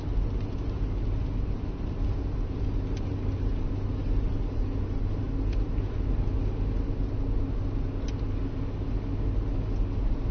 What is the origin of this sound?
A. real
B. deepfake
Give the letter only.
A